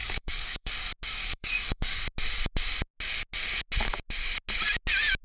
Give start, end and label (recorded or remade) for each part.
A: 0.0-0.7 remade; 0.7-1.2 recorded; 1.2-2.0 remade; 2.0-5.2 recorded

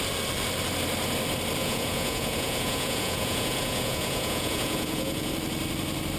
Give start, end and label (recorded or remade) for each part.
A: 0.0-1.6 recorded; 1.6-5.3 remade; 5.3-6.2 recorded

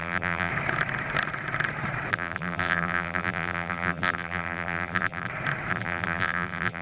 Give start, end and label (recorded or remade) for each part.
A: 0.0-0.5 remade; 0.5-2.1 recorded; 2.1-5.3 remade; 5.3-5.7 recorded; 5.7-6.8 remade